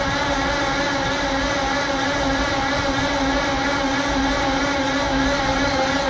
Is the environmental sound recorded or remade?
recorded